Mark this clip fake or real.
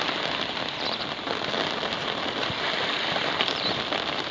real